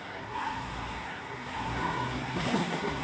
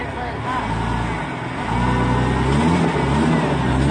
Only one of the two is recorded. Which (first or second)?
second